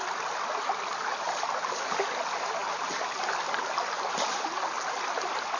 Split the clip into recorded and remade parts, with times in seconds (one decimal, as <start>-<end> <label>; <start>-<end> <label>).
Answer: 0.0-5.6 recorded